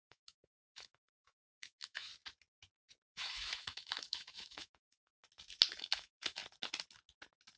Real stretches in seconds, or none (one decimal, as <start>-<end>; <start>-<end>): 2.1-3.1; 5.1-5.8; 6.4-7.6